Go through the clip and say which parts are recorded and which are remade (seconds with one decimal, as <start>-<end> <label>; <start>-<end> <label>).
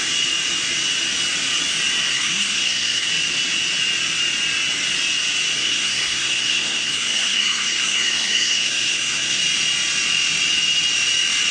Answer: 0.0-2.1 recorded; 2.1-3.1 remade; 3.1-5.5 recorded; 5.5-9.4 remade; 9.4-11.5 recorded